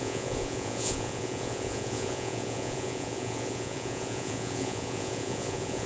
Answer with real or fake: fake